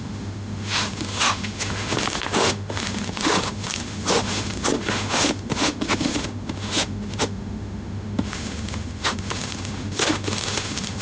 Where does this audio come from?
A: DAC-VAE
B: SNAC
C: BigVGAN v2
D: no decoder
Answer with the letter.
A